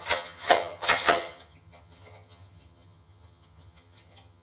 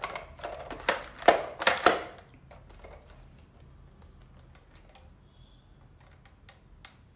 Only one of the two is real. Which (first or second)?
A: second